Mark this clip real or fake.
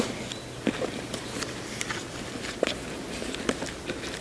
real